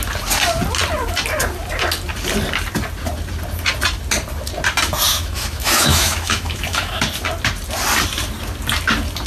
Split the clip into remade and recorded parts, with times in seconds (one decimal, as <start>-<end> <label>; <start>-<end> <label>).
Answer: 0.0-5.1 recorded; 5.1-7.0 remade; 7.0-9.3 recorded